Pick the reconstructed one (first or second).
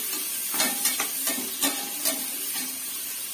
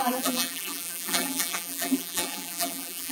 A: second